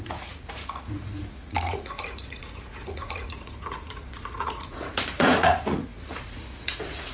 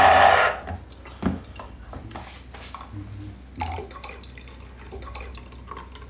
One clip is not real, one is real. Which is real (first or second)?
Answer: second